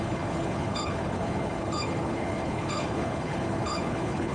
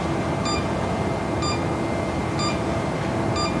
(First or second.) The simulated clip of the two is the first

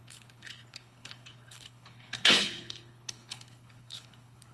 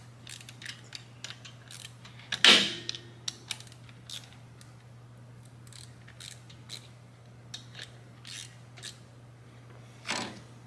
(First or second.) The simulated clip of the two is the first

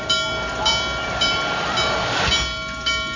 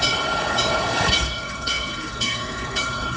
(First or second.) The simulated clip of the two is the second